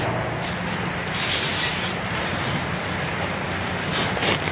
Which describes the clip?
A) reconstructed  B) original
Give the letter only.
B